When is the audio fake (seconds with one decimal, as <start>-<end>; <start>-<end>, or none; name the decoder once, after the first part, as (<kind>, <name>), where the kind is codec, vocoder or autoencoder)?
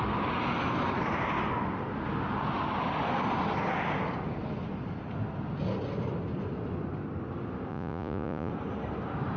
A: 7.7-8.5 (vocoder, Vocos)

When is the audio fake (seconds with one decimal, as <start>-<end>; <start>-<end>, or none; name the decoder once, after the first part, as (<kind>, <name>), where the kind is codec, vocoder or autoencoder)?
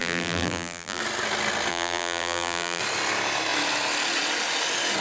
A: 0.0-1.0 (vocoder, BigVGAN v2); 1.7-2.8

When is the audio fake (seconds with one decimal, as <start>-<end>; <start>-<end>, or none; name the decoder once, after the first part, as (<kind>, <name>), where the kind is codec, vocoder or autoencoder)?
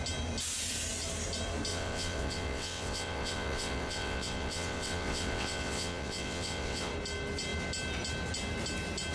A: 1.7-6.9 (vocoder, WaveNeXt)